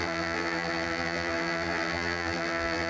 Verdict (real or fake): fake